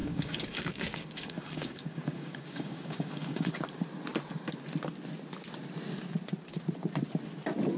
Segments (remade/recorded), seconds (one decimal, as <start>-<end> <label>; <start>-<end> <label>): 0.0-3.5 remade; 3.5-7.8 recorded